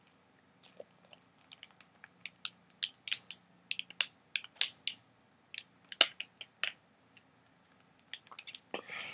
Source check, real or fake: real